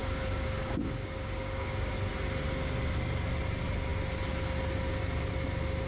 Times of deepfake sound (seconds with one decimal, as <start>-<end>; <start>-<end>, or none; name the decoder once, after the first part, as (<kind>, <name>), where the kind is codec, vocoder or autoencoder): 0.0-1.9 (codec, DAC)